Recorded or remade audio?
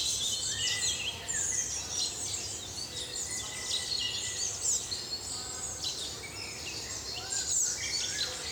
recorded